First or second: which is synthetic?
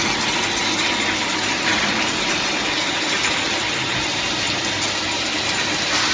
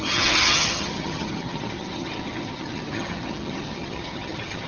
second